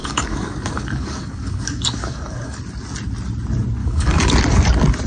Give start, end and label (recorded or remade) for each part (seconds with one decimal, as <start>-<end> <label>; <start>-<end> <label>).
0.0-2.6 remade; 2.6-3.8 recorded; 3.8-4.3 remade; 4.3-5.1 recorded